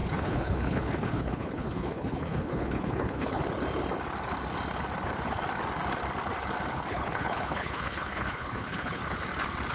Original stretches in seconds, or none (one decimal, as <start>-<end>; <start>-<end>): 3.4-6.7; 9.0-9.7